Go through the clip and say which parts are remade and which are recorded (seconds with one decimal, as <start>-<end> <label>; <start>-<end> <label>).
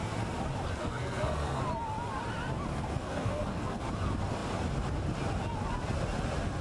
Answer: 0.0-0.8 recorded; 0.8-1.6 remade; 1.6-2.7 recorded; 2.7-3.9 remade; 3.9-6.6 recorded